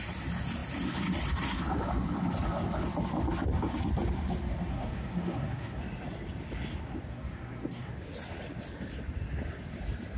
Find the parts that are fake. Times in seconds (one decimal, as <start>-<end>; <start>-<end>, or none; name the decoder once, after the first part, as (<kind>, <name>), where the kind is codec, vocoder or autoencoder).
4.7-5.8 (codec, SNAC); 7.1-7.9